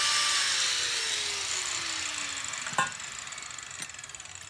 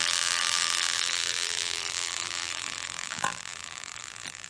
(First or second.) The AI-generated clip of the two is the second